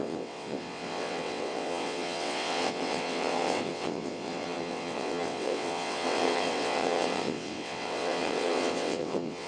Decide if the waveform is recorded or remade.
remade